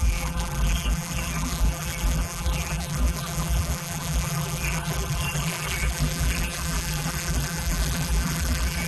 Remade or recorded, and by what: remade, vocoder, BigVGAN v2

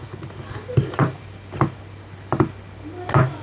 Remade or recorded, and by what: recorded